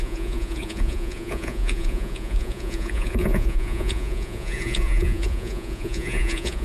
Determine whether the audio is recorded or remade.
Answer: remade